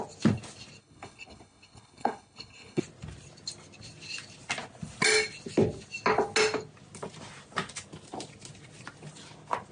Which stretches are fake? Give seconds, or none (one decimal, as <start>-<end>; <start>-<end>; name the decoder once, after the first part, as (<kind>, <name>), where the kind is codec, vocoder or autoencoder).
0.8-2.8 (codec, HILCodec)